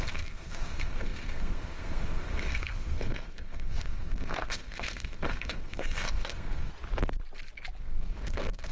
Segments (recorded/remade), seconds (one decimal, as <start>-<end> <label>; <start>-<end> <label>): 0.0-6.7 remade; 6.7-7.8 recorded; 7.8-8.7 remade